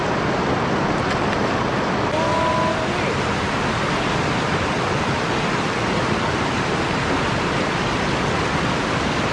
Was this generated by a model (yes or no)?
no